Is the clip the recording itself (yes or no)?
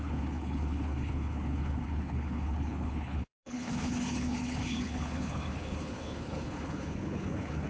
no